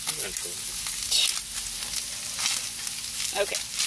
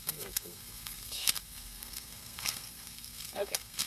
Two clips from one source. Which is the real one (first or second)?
first